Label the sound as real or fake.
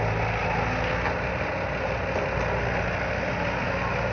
real